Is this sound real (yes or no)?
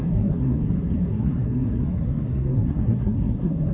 no